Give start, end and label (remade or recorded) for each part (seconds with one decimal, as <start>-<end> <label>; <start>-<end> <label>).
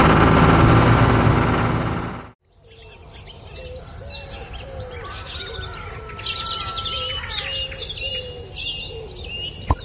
0.0-9.8 recorded